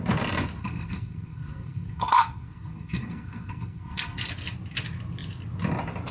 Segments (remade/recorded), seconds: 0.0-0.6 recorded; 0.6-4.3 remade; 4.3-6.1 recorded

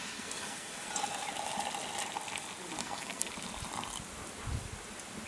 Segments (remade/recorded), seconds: 0.0-0.9 remade; 0.9-2.8 recorded; 2.8-3.3 remade; 3.3-5.3 recorded